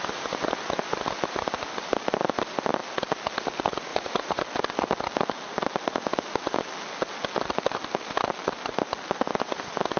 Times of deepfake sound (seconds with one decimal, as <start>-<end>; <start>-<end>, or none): 3.9-4.4